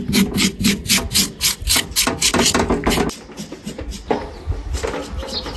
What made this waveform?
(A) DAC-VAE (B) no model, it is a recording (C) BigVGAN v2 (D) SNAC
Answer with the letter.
B